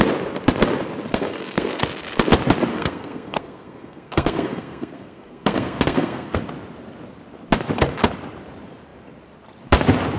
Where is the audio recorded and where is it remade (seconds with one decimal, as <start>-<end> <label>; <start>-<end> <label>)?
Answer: 0.0-1.1 recorded; 1.1-1.8 remade; 1.8-2.7 recorded; 2.7-6.4 remade; 6.4-10.2 recorded